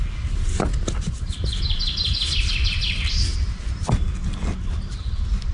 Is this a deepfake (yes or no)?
no